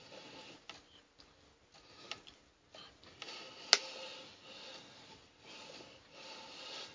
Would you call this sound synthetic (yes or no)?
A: no